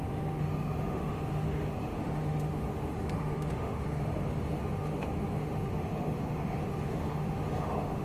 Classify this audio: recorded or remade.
remade